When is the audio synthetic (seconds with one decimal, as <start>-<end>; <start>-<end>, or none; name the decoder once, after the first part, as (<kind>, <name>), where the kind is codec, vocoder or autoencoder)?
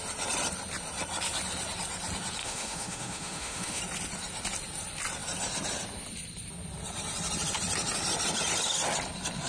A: 2.4-3.8 (autoencoder, DAC-VAE)